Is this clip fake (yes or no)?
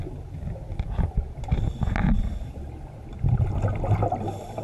no